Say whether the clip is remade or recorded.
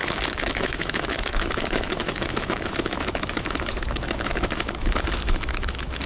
remade